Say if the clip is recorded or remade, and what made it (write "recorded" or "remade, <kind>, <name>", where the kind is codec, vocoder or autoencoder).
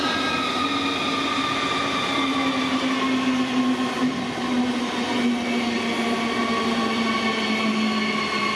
recorded